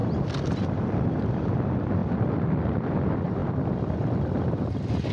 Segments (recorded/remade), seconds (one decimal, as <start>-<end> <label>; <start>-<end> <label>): 0.0-1.2 recorded; 1.2-5.1 remade